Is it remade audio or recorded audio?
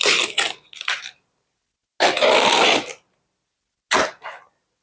recorded